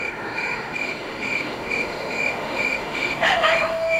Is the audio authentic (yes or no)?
no